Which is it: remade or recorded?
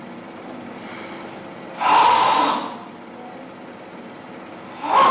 recorded